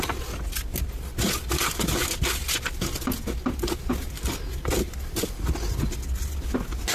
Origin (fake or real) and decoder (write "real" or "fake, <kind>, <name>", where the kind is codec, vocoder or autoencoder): real